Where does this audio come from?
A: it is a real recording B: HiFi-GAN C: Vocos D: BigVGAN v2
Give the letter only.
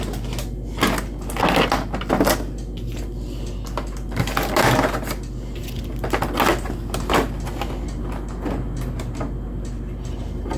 A